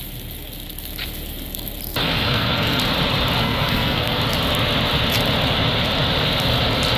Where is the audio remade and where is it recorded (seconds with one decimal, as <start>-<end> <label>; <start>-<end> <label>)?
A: 0.0-2.0 recorded; 2.0-2.8 remade; 2.8-3.4 recorded; 3.4-4.2 remade; 4.2-7.0 recorded